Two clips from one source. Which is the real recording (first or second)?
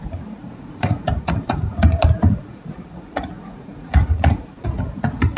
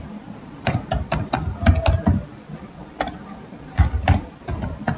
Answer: second